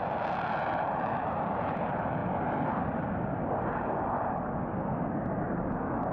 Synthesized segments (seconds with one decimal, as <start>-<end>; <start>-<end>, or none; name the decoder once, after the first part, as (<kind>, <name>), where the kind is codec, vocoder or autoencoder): none